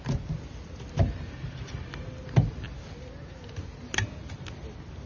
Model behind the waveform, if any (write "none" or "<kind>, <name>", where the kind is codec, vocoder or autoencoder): none